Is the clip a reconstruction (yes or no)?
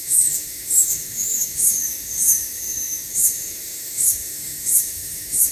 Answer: yes